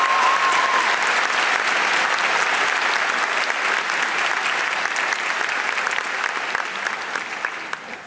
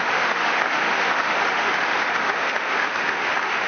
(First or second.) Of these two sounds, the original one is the first